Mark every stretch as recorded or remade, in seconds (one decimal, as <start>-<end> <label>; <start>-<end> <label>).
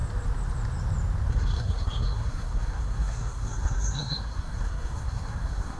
0.0-1.3 recorded; 1.3-5.8 remade